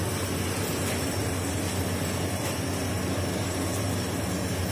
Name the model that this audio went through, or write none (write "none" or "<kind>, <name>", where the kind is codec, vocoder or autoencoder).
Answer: none